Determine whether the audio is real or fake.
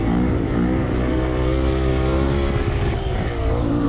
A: fake